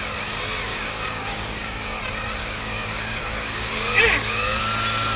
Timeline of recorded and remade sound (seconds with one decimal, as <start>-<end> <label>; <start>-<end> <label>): 0.0-0.7 recorded; 0.7-2.0 remade; 2.0-2.4 recorded; 2.4-4.6 remade; 4.6-5.2 recorded